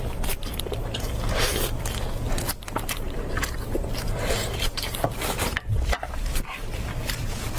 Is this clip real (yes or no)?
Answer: no